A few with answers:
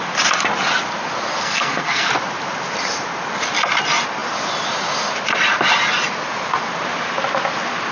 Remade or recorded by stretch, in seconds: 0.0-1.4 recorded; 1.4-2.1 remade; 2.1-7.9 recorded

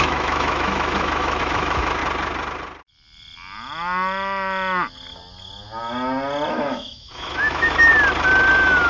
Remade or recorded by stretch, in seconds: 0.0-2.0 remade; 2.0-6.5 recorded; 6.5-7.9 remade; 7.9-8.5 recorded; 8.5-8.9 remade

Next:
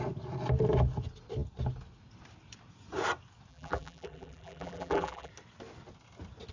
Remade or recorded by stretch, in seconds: 0.0-3.5 recorded; 3.5-5.3 remade; 5.3-6.5 recorded

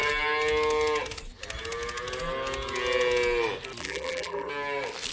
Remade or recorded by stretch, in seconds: 0.0-3.8 recorded; 3.8-4.5 remade; 4.5-5.1 recorded

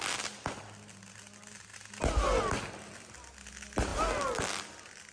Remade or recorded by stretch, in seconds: 0.0-5.1 recorded

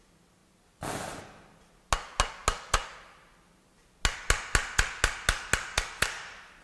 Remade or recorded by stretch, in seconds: 0.0-6.6 recorded

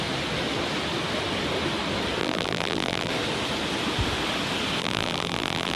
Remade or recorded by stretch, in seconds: 0.0-2.2 recorded; 2.2-3.1 remade; 3.1-4.8 recorded; 4.8-5.8 remade